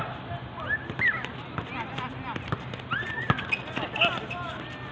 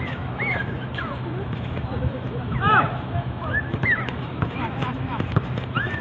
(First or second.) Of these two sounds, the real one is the first